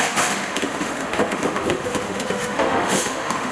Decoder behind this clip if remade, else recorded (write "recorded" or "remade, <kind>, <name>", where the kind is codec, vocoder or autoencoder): remade, autoencoder, DAC-VAE